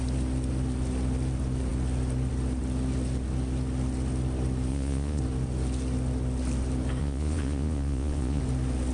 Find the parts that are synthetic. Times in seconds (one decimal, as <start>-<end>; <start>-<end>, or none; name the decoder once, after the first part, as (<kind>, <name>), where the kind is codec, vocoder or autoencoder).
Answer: 4.7-5.2 (vocoder, Vocos); 7.0-8.4